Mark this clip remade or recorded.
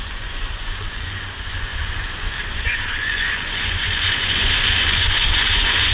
remade